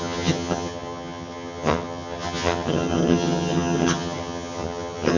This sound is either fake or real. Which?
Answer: fake